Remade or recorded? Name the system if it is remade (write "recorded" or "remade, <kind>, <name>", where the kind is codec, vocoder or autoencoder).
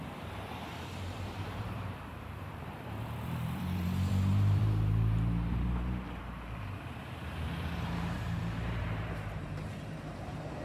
remade, vocoder, BigVGAN v2